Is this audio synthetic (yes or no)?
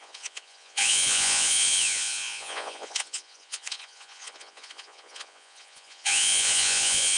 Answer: yes